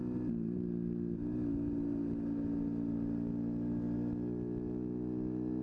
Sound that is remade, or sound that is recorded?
recorded